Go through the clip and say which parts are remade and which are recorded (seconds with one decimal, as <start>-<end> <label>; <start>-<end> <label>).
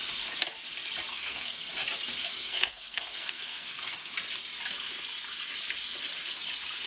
0.0-1.1 recorded; 1.1-1.7 remade; 1.7-2.2 recorded; 2.2-4.1 remade; 4.1-6.9 recorded